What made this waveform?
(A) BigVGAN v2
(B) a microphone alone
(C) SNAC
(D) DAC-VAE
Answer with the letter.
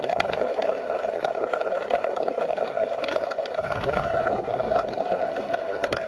C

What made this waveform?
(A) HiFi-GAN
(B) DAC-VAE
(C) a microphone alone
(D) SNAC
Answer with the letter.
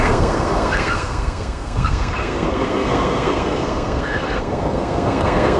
D